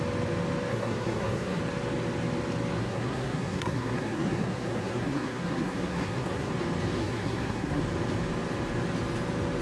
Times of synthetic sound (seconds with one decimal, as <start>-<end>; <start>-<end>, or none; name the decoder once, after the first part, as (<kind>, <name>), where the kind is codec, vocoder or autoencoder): 0.7-1.6 (codec, SNAC); 2.8-6.5; 7.0-7.8